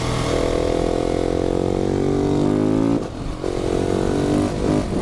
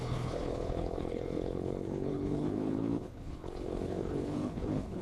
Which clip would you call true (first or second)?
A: first